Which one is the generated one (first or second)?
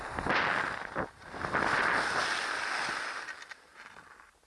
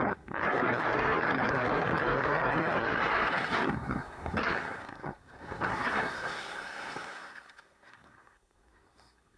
second